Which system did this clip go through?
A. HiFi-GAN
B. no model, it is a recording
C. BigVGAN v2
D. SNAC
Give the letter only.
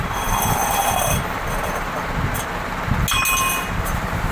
B